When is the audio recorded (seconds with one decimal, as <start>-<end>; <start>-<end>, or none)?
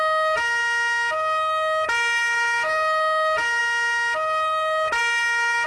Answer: 0.0-5.7